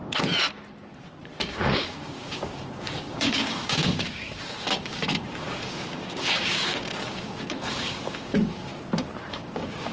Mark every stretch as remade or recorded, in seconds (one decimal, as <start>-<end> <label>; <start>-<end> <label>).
0.0-1.5 recorded; 1.5-8.7 remade; 8.7-9.3 recorded; 9.3-9.9 remade